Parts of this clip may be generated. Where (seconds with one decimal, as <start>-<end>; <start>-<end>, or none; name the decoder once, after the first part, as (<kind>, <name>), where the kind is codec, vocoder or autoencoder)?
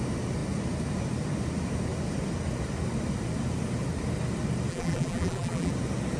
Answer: 4.7-5.7 (vocoder, BigVGAN v2)